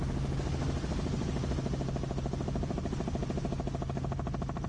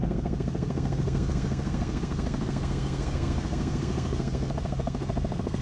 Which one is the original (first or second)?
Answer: first